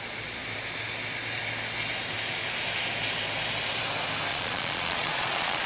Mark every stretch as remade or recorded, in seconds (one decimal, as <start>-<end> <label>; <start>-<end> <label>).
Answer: 0.0-4.3 recorded; 4.3-5.7 remade